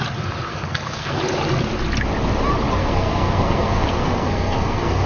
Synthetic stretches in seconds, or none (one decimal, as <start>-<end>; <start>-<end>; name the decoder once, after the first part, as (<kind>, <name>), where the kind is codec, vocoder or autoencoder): 0.5-1.2 (codec, SNAC); 2.8-5.1